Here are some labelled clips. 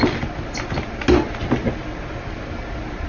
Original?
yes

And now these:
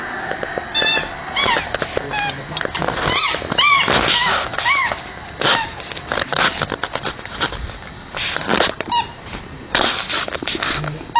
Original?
yes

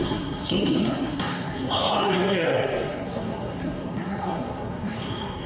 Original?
no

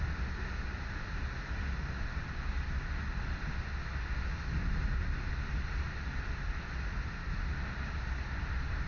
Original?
yes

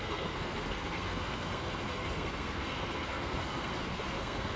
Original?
no